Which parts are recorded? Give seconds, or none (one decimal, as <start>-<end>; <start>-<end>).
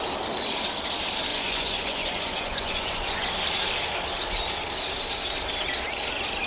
0.0-1.3; 3.3-6.5